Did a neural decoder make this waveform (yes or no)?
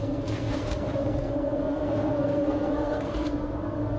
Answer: yes